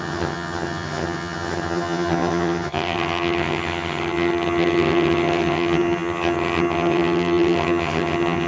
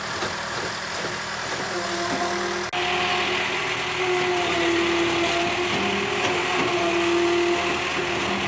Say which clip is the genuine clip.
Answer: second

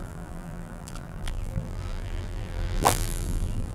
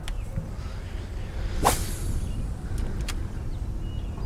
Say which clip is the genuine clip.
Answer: second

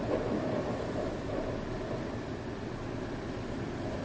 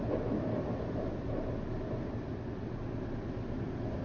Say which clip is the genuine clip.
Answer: second